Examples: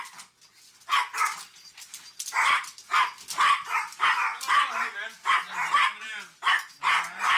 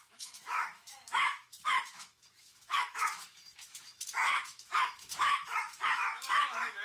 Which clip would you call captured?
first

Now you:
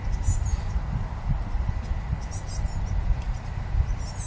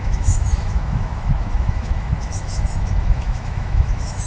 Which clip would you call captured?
first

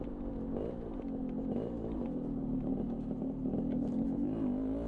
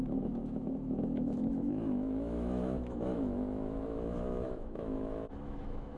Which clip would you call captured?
first